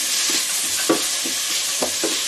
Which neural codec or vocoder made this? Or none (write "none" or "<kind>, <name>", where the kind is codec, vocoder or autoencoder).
none